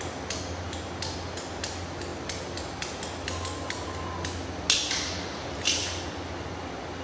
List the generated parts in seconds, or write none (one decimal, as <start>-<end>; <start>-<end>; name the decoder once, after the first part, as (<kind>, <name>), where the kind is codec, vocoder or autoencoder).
none